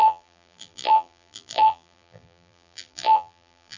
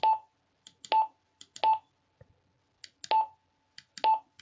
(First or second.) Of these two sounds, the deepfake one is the first